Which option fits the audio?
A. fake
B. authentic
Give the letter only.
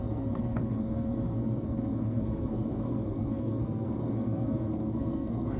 A